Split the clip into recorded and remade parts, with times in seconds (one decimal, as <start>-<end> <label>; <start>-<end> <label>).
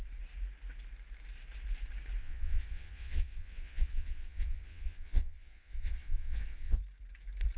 0.0-2.2 recorded; 2.2-6.8 remade; 6.8-7.6 recorded